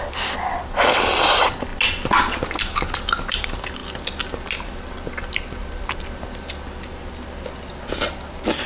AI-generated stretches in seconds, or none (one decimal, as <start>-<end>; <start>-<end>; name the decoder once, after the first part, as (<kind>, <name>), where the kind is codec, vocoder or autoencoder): none